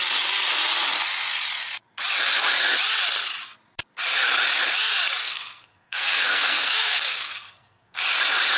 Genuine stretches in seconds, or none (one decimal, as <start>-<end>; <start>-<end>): 0.0-5.2; 8.0-8.6